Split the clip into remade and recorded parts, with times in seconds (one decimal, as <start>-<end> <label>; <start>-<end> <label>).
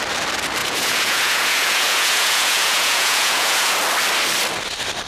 0.0-0.6 recorded; 0.6-3.7 remade; 3.7-5.1 recorded